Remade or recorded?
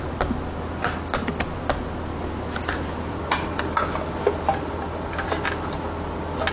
recorded